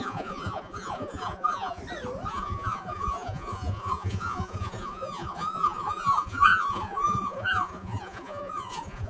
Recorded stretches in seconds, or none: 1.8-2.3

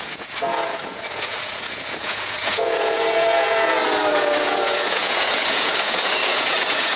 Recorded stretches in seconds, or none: none

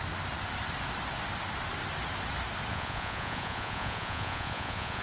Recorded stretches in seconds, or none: 0.0-2.7

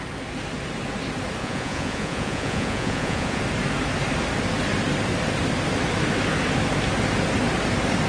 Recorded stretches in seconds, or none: 0.0-1.4; 3.4-8.1

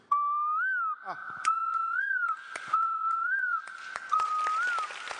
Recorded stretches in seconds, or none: 0.0-1.2; 4.3-5.2

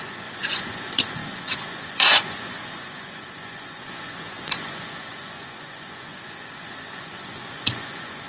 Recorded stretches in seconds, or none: none

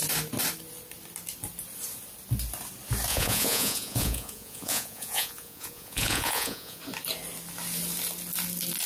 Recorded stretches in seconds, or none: 0.0-3.1; 6.8-8.9